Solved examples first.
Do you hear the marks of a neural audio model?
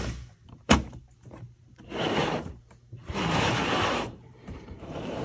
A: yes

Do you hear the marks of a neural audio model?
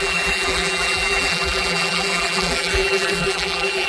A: yes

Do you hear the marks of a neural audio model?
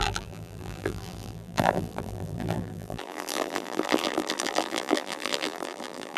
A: yes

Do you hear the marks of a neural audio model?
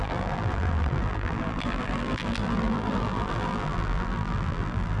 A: yes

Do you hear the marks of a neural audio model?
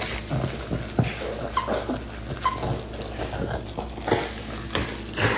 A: no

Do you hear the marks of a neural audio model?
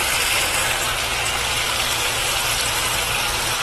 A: no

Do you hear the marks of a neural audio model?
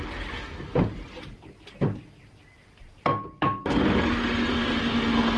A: no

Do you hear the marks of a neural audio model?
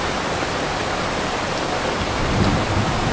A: yes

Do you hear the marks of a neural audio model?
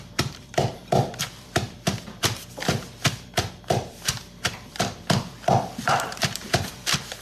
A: yes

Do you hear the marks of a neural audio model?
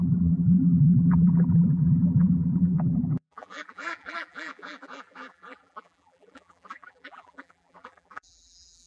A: yes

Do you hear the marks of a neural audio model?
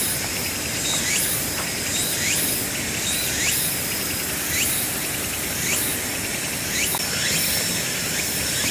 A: yes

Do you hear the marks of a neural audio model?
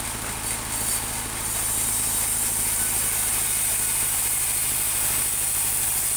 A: no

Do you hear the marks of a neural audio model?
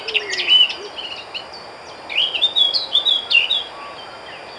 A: no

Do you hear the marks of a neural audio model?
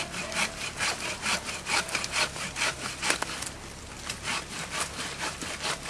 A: yes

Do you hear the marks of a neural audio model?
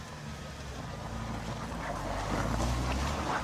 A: no